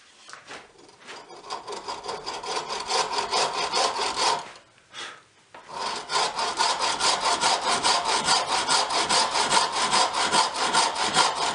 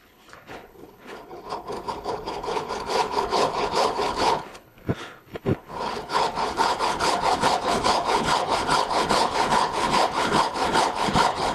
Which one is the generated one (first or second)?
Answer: second